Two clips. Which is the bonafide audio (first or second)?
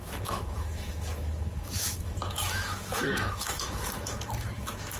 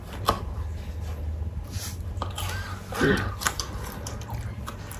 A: second